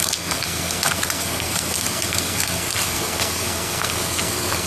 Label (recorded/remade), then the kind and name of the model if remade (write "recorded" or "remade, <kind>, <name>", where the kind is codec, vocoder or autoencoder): remade, codec, SNAC